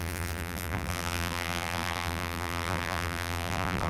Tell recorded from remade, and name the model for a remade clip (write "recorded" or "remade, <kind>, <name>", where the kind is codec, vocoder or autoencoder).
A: remade, vocoder, BigVGAN v2